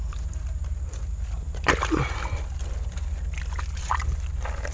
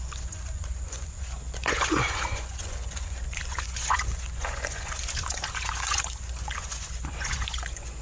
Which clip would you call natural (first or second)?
first